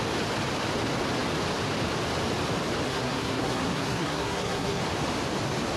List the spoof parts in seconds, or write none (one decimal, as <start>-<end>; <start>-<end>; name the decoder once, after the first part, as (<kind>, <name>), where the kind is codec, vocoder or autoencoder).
2.9-4.8 (codec, SNAC)